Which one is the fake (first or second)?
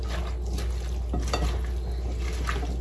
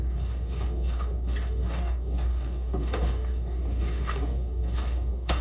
second